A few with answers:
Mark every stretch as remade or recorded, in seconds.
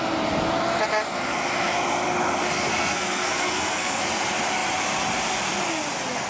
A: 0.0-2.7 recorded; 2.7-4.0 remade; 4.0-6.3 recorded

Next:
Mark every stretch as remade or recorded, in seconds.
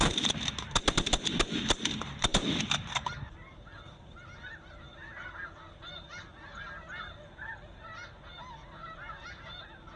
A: 0.0-10.0 recorded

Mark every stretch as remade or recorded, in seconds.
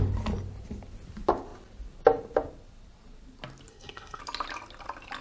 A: 0.0-3.7 recorded; 3.7-4.2 remade; 4.2-5.2 recorded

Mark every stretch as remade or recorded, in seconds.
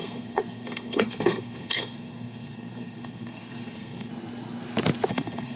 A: 0.0-4.1 remade; 4.1-5.1 recorded; 5.1-5.6 remade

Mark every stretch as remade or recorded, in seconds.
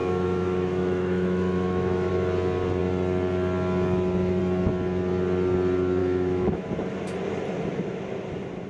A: 0.0-2.1 remade; 2.1-6.0 recorded; 6.0-6.7 remade; 6.7-8.7 recorded